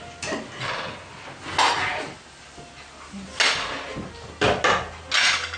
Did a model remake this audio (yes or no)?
no